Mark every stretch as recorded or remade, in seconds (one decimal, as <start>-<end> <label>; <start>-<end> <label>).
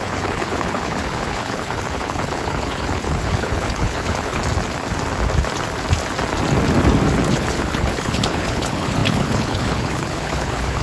0.0-4.4 remade; 4.4-7.3 recorded; 7.3-10.8 remade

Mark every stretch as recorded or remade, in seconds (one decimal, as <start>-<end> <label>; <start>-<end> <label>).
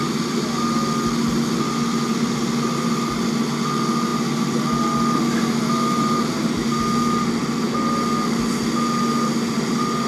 0.0-10.1 recorded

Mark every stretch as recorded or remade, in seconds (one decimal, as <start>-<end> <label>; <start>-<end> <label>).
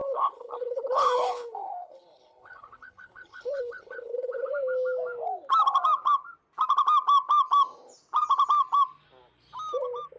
0.0-4.5 remade; 4.5-10.2 recorded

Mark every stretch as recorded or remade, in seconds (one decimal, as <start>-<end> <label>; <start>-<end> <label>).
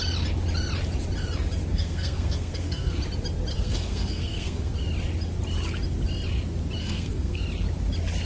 0.0-1.7 recorded; 1.7-3.0 remade; 3.0-3.5 recorded; 3.5-4.7 remade; 4.7-6.8 recorded; 6.8-7.4 remade; 7.4-8.3 recorded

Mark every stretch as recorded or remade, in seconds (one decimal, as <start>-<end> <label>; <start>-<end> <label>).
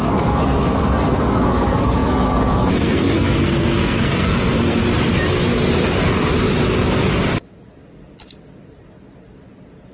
0.0-4.8 remade; 4.8-9.9 recorded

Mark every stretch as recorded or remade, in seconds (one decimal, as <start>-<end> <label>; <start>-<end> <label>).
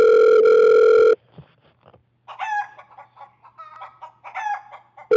0.0-5.2 recorded